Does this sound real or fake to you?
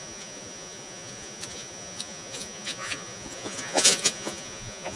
fake